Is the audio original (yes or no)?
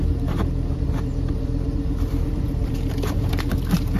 no